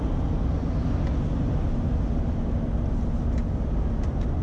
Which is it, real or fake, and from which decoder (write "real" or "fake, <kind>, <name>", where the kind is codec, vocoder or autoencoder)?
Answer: real